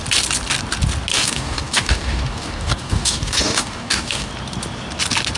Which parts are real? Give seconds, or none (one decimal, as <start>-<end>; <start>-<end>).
0.0-1.1; 4.3-5.4